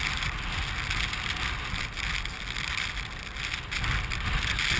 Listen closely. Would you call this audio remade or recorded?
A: recorded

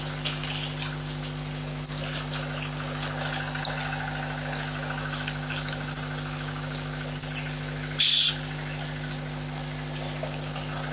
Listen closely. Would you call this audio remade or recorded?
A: recorded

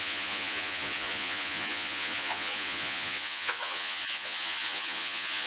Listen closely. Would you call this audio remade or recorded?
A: remade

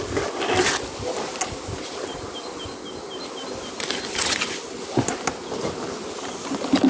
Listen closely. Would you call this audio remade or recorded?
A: recorded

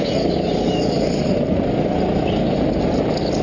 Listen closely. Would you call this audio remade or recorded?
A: recorded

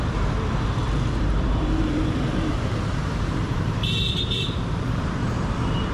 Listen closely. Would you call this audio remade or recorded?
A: remade